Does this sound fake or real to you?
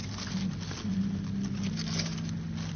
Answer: real